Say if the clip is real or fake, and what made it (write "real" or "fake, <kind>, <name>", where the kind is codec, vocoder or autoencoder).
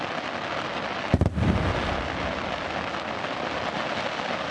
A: real